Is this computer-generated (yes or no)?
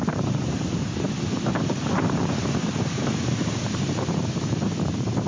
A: yes